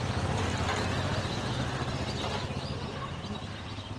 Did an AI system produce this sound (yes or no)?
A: no